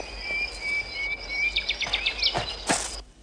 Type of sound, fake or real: real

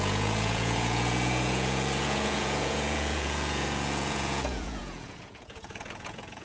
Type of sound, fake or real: fake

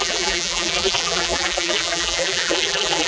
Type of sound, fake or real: fake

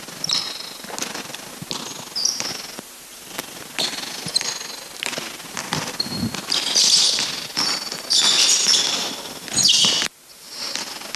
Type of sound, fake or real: real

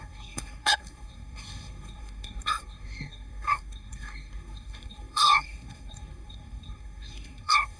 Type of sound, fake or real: fake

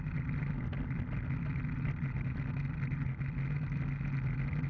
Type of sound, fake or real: real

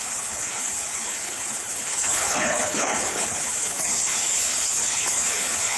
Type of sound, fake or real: fake